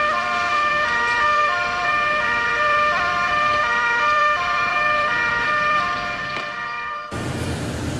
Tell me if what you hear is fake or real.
fake